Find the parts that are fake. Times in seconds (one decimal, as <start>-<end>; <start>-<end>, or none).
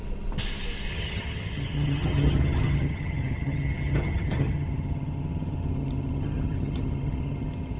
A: 0.9-7.8